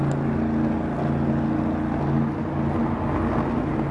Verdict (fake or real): real